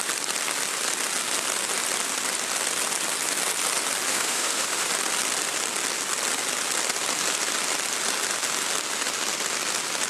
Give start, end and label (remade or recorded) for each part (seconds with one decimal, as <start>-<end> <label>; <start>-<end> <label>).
0.0-4.1 recorded; 4.1-4.9 remade; 4.9-10.1 recorded